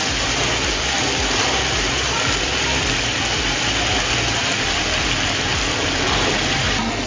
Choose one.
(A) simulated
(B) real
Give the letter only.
B